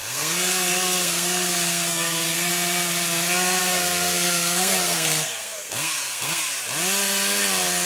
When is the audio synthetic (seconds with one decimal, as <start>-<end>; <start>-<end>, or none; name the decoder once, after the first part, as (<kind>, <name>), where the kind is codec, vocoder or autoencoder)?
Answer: 0.0-2.5 (codec, SNAC); 3.6-6.4